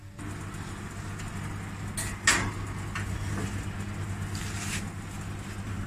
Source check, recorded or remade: recorded